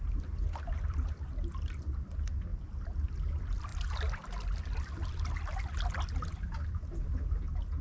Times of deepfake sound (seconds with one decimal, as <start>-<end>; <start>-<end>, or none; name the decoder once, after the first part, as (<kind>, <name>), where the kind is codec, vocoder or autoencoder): none